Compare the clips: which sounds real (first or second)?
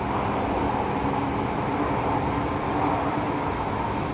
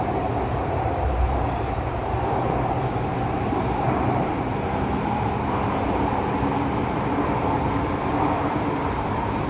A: first